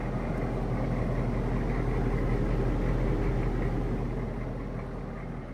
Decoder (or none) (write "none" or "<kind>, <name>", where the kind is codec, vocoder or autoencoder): none